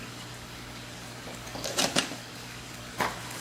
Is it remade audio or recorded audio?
remade